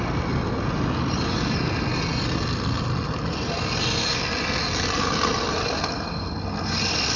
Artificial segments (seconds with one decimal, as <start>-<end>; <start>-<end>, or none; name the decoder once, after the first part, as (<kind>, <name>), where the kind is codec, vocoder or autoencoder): none